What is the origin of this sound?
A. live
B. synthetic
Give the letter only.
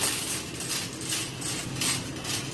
A